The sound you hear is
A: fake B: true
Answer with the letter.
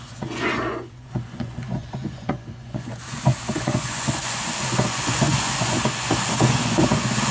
A